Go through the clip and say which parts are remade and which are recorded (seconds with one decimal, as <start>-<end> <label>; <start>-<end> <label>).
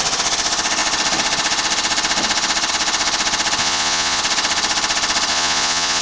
0.0-3.6 recorded; 3.6-4.2 remade; 4.2-5.3 recorded; 5.3-6.0 remade